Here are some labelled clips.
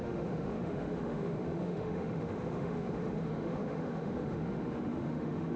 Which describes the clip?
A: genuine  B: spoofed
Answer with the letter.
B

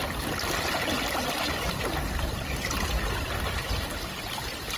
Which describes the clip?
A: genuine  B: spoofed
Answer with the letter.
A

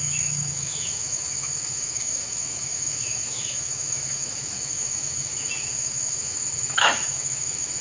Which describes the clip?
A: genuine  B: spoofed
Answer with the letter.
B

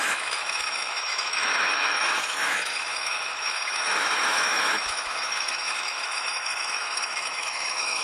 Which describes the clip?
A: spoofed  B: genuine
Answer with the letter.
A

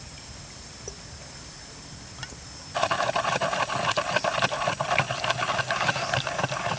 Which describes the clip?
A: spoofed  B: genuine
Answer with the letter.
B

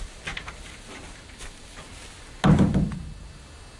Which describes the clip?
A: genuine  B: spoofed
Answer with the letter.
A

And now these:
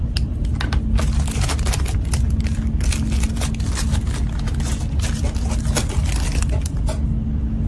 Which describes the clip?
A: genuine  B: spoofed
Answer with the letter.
A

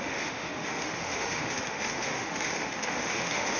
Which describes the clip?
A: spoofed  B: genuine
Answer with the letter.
A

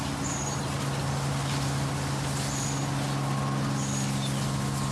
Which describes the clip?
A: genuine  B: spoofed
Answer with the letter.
A